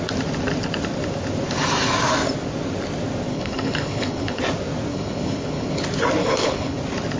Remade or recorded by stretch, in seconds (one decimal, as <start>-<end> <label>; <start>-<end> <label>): 0.0-3.3 recorded; 3.3-4.4 remade; 4.4-4.9 recorded; 4.9-5.8 remade; 5.8-6.2 recorded; 6.2-6.8 remade; 6.8-7.2 recorded